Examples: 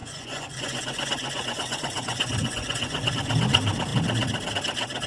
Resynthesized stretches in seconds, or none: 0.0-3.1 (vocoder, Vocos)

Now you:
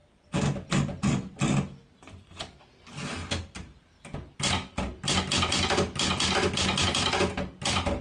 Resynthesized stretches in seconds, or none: 0.0-0.7 (vocoder, BigVGAN v2)

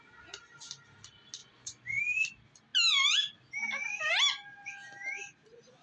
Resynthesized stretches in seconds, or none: 1.4-2.0 (vocoder, Vocos)

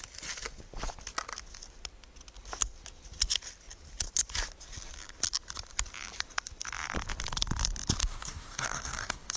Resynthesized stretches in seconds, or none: 8.0-9.4 (codec, DAC)

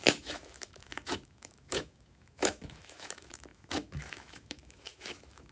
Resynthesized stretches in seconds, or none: 0.0-5.5 (autoencoder, DAC-VAE)

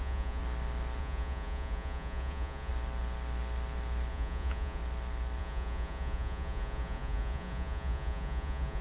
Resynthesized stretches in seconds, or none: 0.0-0.4 (vocoder, Vocos); 1.0-2.7; 4.1-4.8; 5.4-8.8

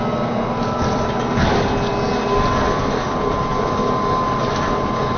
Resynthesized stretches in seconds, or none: none

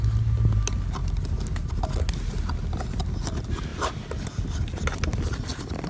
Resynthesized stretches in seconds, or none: none